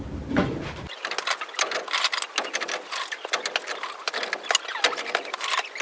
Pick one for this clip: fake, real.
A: real